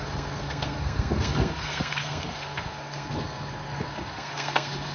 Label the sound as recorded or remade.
remade